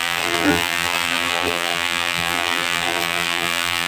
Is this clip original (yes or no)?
no